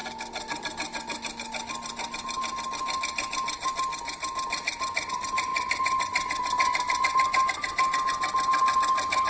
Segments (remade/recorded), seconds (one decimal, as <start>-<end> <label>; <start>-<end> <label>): 0.0-5.1 recorded; 5.1-5.5 remade; 5.5-9.3 recorded

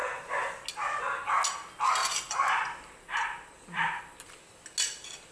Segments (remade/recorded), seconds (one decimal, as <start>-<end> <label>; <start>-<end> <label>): 0.0-0.6 remade; 0.6-2.0 recorded; 2.0-4.0 remade; 4.0-5.3 recorded